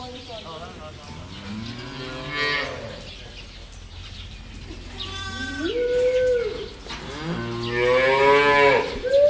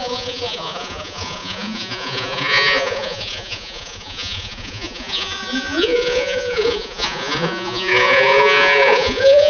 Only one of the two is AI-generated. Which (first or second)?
second